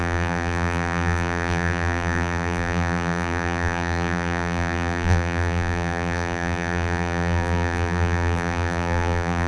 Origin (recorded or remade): remade